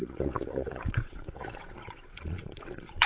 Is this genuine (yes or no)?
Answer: no